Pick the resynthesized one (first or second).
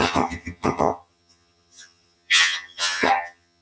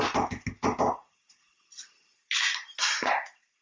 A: first